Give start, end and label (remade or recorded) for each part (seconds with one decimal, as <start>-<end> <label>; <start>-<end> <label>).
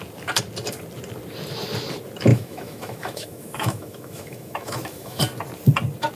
0.0-2.3 recorded; 2.3-5.2 remade; 5.2-6.2 recorded